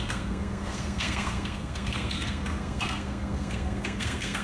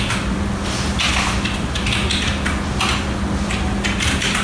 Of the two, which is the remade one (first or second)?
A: first